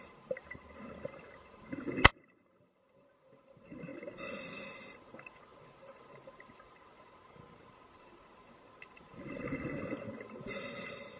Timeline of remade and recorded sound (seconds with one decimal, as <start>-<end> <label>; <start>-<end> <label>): 0.0-11.2 recorded